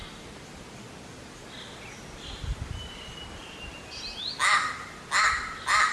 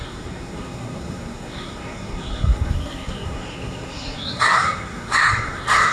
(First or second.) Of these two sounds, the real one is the first